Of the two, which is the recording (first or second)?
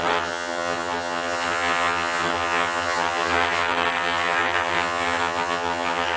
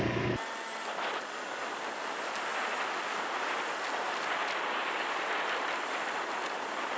second